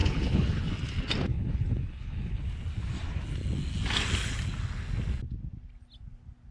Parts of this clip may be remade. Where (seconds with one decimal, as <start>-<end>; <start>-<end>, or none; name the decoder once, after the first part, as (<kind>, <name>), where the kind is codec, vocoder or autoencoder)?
0.0-0.7 (codec, HILCodec); 1.3-2.4